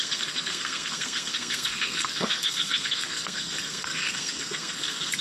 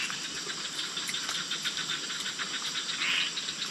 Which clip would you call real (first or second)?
second